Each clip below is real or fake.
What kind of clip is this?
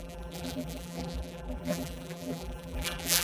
fake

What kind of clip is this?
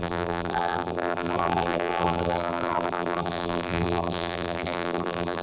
fake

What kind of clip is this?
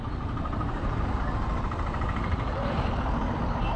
fake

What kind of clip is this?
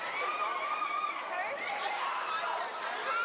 fake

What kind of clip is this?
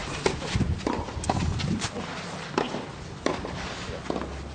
real